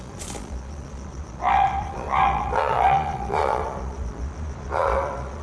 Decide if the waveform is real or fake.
fake